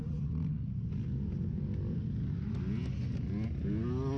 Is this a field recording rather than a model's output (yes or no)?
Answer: yes